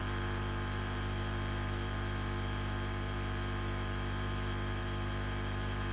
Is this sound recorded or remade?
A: remade